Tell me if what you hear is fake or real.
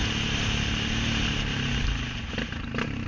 real